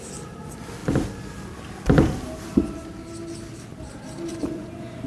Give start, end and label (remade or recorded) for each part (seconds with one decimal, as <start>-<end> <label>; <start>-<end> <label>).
0.0-4.3 recorded; 4.3-5.1 remade